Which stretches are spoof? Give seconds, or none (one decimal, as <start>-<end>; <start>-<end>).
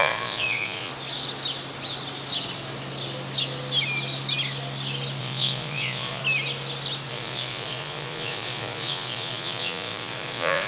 0.0-0.9; 5.2-6.2; 7.1-10.7